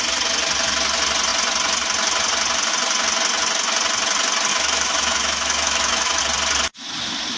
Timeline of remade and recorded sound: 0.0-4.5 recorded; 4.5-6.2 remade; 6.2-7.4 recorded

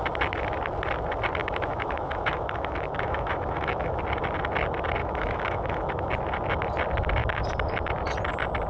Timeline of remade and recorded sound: 0.0-1.4 recorded; 1.4-4.0 remade; 4.0-5.0 recorded; 5.0-6.1 remade; 6.1-8.7 recorded

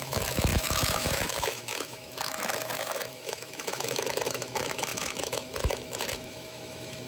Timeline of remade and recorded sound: 0.0-7.1 remade